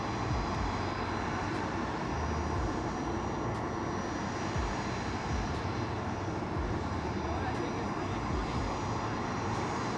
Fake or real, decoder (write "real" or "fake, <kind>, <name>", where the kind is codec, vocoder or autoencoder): real